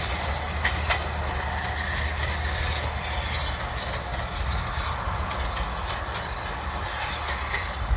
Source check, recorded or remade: recorded